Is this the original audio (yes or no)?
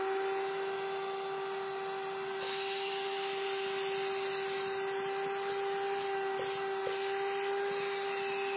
yes